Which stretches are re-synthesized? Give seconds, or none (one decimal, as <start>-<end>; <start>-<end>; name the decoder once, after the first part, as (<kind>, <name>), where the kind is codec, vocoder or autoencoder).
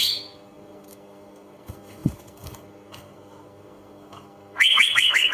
0.0-5.3 (codec, SNAC)